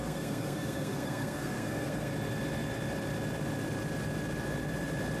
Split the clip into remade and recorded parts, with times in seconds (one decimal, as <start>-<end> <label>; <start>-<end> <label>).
0.0-2.1 remade; 2.1-5.2 recorded